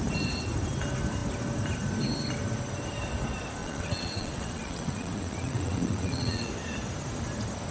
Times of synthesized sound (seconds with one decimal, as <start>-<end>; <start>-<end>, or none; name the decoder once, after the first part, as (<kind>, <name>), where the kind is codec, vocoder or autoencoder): 3.6-6.5 (vocoder, WaveNeXt)